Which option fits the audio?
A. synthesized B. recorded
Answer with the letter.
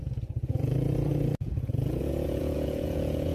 A